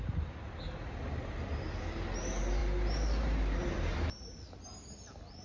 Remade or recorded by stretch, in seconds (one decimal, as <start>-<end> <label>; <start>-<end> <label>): 0.0-5.4 recorded